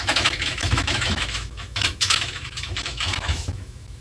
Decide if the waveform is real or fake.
fake